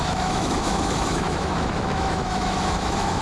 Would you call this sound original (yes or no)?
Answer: no